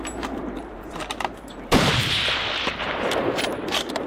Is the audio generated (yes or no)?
yes